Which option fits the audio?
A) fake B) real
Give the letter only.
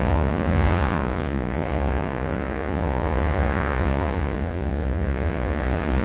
A